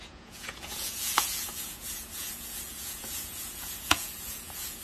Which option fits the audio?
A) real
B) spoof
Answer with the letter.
B